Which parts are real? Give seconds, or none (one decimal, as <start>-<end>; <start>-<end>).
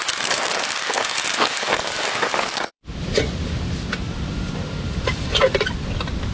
2.8-6.3